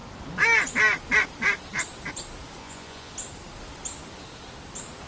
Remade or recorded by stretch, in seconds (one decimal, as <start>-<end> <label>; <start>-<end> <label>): 0.0-2.6 recorded; 2.6-3.1 remade; 3.1-5.1 recorded